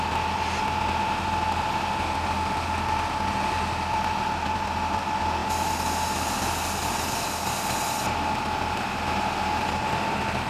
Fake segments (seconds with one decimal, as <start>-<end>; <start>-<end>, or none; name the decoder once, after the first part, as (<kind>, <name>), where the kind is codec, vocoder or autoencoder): none